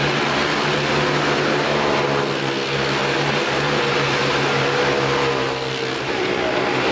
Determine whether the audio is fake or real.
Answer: real